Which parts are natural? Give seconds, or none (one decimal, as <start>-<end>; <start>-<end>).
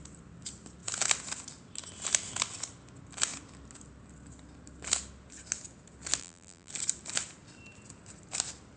0.0-6.2; 6.7-8.8